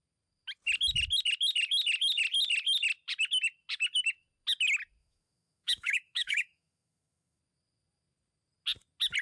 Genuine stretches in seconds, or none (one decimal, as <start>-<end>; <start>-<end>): 0.0-5.0; 7.4-9.2